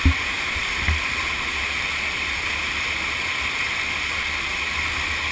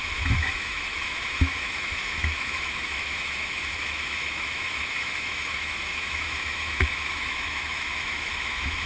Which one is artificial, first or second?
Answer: second